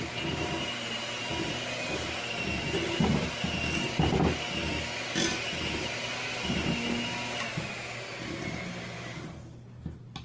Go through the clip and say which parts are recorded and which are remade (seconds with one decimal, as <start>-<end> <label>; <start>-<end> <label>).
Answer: 0.0-10.2 recorded